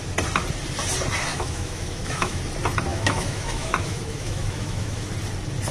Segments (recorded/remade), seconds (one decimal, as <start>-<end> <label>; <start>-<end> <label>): 0.0-1.3 recorded; 1.3-2.4 remade; 2.4-2.9 recorded; 2.9-5.1 remade; 5.1-5.7 recorded